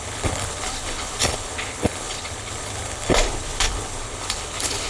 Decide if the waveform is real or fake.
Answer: fake